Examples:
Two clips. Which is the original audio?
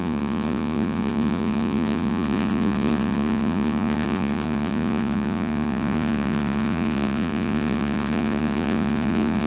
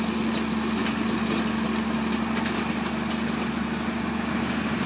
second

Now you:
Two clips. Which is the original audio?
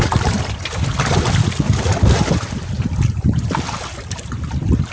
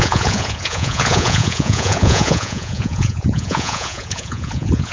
first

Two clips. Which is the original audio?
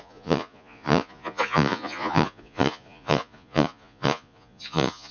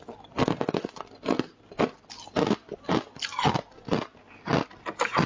second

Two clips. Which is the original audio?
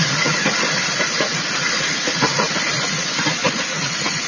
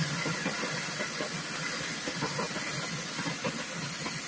second